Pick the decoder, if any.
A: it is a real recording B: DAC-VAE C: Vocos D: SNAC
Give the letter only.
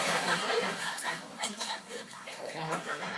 D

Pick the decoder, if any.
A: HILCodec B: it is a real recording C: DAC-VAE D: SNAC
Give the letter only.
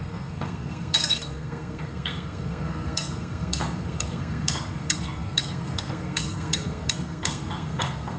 D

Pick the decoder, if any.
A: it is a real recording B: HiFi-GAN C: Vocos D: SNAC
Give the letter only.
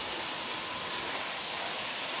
A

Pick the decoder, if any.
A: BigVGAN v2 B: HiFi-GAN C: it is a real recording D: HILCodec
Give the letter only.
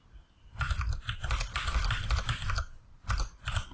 C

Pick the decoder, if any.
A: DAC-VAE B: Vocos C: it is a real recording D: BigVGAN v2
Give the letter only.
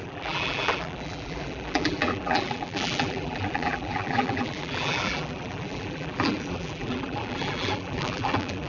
D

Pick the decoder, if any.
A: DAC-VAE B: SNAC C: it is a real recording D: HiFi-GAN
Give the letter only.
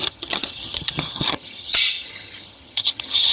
D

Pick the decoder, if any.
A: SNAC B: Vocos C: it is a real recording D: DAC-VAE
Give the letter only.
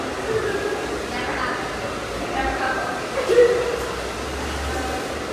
C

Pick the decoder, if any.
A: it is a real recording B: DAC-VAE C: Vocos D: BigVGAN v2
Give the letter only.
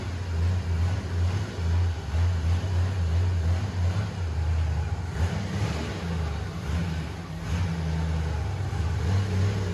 A